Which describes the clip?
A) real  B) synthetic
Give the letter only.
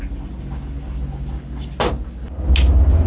A